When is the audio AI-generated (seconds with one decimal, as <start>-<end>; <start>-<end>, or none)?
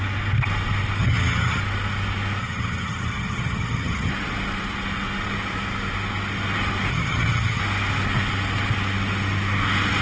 1.0-1.6; 2.4-4.1; 6.9-7.6